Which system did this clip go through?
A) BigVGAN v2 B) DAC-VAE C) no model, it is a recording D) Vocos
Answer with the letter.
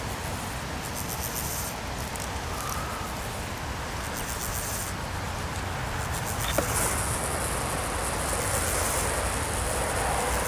C